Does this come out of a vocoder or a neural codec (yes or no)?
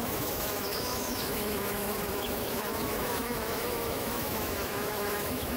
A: yes